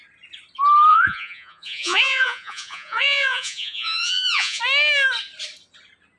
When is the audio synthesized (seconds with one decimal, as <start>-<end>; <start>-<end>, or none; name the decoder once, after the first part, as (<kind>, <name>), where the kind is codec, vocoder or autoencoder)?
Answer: 0.9-4.6 (vocoder, Vocos)